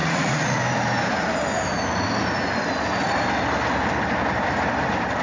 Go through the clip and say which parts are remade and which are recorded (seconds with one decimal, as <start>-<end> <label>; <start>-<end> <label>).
0.0-0.6 remade; 0.6-5.2 recorded